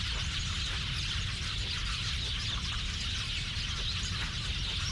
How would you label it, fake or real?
real